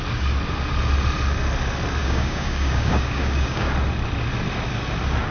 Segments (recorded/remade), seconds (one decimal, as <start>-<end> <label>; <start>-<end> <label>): 0.0-2.0 recorded; 2.0-3.7 remade; 3.7-5.3 recorded